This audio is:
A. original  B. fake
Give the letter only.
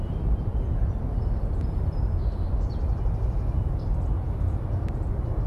B